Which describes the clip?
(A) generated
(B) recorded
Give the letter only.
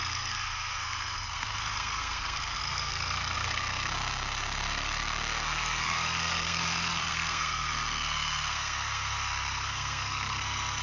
A